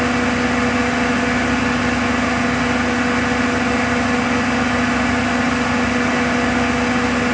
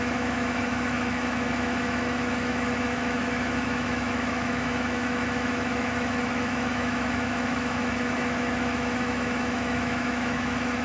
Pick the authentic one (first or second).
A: first